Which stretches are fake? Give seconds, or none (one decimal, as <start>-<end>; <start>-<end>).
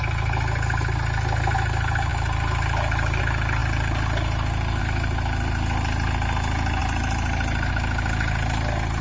6.8-7.7